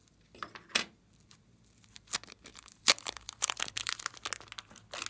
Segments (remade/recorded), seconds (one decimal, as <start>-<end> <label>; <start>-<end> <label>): 0.0-2.5 recorded; 2.5-4.0 remade; 4.0-5.1 recorded